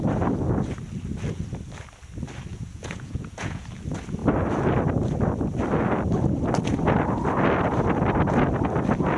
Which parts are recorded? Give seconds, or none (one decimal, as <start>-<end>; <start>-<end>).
0.0-2.5; 3.6-9.2